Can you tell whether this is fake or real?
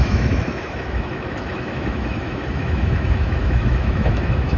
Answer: fake